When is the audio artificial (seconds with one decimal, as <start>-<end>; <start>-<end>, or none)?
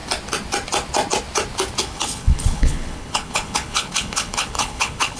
1.8-5.2